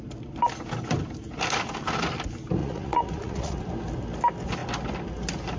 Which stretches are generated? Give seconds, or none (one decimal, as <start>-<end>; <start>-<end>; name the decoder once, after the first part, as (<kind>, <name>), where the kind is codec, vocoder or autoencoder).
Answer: 2.6-3.6 (vocoder, Vocos)